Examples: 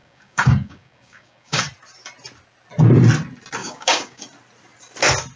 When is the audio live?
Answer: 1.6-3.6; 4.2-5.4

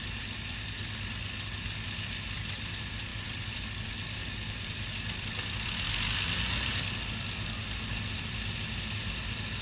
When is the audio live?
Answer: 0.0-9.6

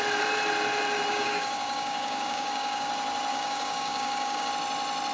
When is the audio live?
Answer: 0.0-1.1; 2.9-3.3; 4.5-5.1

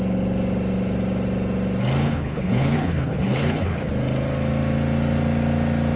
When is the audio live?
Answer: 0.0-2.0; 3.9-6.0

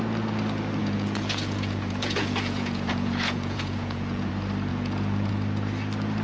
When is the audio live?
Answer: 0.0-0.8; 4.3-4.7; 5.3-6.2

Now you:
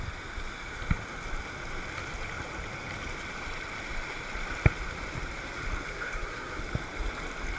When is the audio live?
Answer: 0.0-5.9; 6.6-7.6

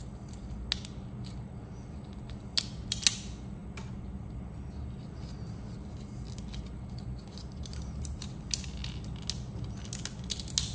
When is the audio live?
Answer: 0.0-10.7

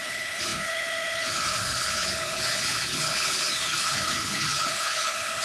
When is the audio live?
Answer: none